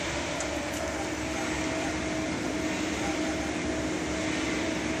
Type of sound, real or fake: real